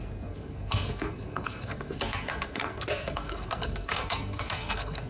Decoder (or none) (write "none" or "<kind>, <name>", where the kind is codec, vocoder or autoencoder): codec, SNAC